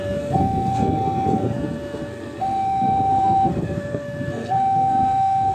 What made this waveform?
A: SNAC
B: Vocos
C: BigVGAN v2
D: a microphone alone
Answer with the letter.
A